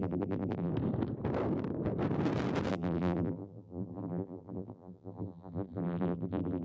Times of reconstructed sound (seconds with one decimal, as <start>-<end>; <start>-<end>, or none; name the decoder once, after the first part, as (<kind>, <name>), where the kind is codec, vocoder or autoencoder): 0.0-0.7 (vocoder, BigVGAN v2); 2.7-6.6